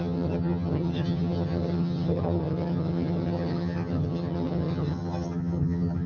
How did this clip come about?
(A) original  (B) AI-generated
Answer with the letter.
B